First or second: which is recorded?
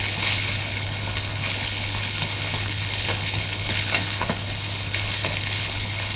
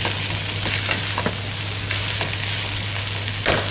second